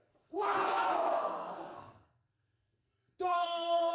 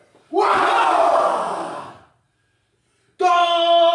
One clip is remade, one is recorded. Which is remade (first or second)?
first